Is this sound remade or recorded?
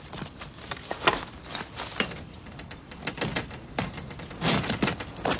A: remade